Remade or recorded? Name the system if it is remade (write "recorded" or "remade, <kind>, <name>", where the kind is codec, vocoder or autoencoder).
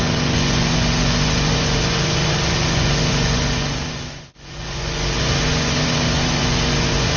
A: remade, vocoder, Vocos